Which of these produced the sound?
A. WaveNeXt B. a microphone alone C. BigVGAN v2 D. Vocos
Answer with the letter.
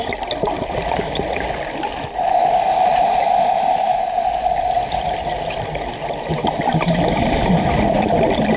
B